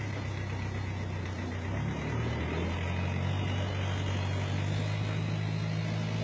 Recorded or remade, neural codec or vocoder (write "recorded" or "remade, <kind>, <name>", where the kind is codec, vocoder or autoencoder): recorded